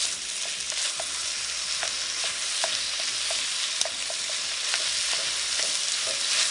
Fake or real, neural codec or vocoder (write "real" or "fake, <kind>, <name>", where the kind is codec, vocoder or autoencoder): real